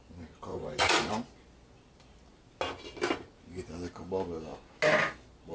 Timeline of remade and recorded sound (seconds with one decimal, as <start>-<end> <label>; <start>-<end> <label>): 0.0-0.5 recorded; 0.5-1.1 remade; 1.1-5.5 recorded